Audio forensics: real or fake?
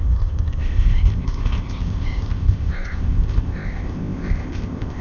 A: fake